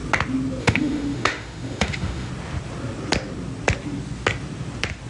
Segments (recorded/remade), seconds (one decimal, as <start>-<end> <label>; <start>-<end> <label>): 0.0-0.6 recorded; 0.6-2.3 remade; 2.3-5.1 recorded